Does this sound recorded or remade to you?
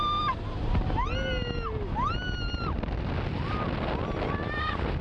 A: recorded